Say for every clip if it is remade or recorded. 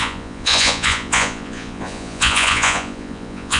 remade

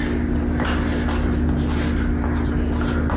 recorded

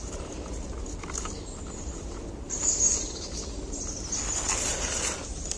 recorded